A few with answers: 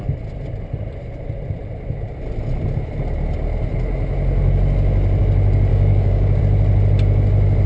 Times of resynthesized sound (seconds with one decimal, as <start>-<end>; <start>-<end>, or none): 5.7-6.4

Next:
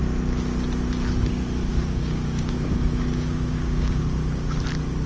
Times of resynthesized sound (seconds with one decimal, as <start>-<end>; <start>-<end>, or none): 1.7-4.0

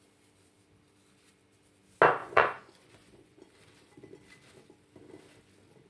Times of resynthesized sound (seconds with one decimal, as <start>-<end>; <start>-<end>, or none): 2.2-3.4

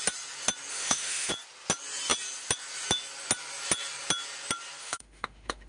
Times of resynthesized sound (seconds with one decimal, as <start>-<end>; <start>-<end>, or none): 0.7-1.3; 4.8-5.7